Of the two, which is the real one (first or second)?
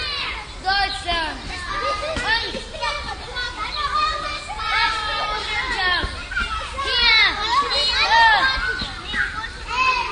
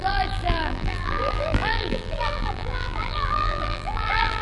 first